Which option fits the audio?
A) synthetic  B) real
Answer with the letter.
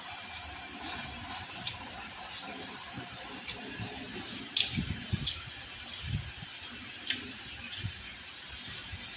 A